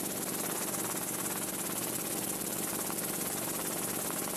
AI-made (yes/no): no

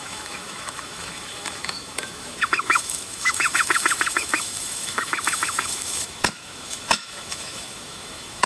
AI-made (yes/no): yes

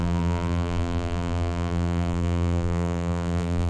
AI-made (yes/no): yes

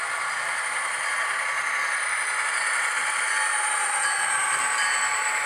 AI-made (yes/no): no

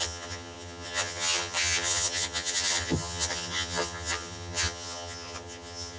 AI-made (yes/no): yes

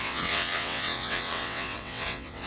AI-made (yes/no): yes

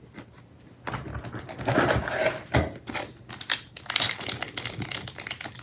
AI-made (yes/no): no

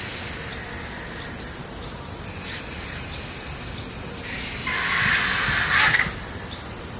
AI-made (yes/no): no